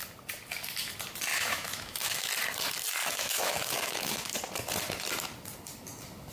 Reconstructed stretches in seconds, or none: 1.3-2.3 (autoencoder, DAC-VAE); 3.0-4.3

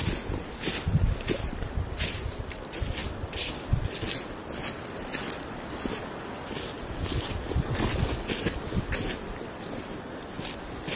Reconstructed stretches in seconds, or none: none

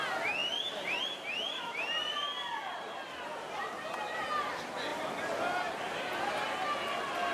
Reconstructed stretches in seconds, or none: 0.4-1.0 (vocoder, BigVGAN v2)

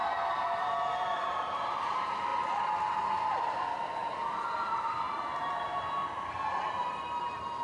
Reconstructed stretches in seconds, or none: 1.2-2.3 (vocoder, BigVGAN v2); 3.2-6.0; 6.7-7.6

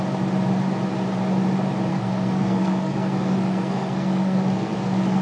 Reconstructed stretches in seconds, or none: 1.9-5.2 (codec, SNAC)

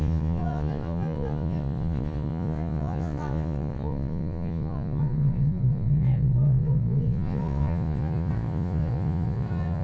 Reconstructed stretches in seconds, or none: 0.0-9.8 (vocoder, Vocos)

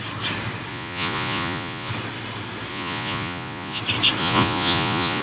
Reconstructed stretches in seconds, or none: 0.7-1.9 (vocoder, Vocos); 2.7-3.8; 4.2-5.2